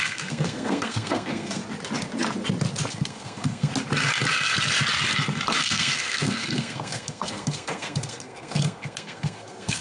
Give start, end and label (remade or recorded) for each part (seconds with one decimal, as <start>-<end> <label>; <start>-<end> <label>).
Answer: 0.0-1.6 remade; 1.6-2.9 recorded; 2.9-3.7 remade; 3.7-5.6 recorded; 5.6-9.8 remade